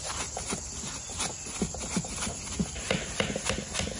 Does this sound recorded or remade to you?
recorded